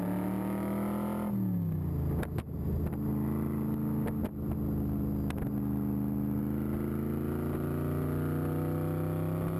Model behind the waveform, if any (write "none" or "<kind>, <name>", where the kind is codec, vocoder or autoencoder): none